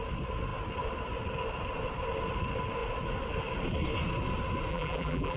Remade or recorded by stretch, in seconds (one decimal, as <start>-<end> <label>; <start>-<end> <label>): 0.0-4.7 recorded; 4.7-5.4 remade

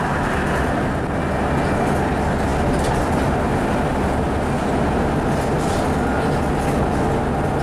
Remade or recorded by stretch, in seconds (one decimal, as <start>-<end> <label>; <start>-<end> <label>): 0.0-7.6 recorded

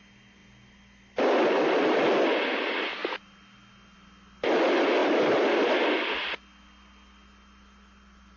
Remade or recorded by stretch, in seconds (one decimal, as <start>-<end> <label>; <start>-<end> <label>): 0.0-0.4 recorded; 0.4-1.8 remade; 1.8-5.0 recorded; 5.0-5.7 remade; 5.7-8.4 recorded

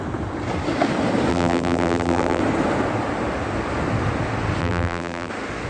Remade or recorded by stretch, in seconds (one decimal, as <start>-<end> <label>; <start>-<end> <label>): 0.0-1.3 recorded; 1.3-2.4 remade; 2.4-4.6 recorded; 4.6-5.3 remade; 5.3-5.7 recorded

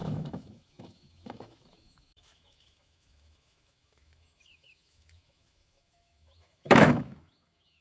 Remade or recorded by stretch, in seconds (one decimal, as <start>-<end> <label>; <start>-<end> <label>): 0.0-7.8 remade

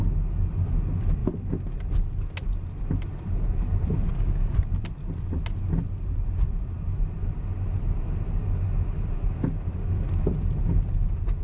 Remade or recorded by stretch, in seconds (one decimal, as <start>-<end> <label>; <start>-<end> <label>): 0.0-3.5 recorded; 3.5-4.1 remade; 4.1-4.6 recorded; 4.6-5.4 remade; 5.4-11.4 recorded